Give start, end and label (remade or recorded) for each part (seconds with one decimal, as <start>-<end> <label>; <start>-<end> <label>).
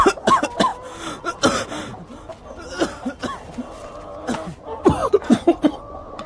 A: 0.0-5.0 recorded; 5.0-6.3 remade